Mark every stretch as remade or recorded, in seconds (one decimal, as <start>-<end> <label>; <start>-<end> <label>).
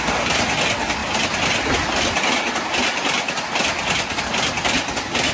0.0-5.3 recorded